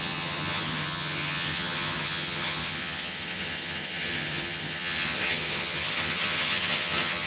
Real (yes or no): no